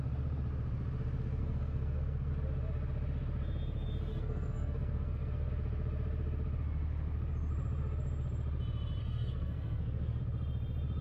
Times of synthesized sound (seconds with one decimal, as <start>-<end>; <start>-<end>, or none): 1.4-2.3; 4.1-5.5; 9.0-10.2